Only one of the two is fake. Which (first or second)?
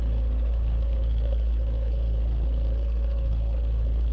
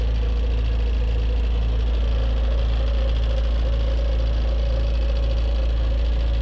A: first